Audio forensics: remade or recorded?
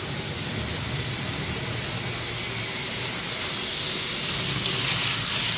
recorded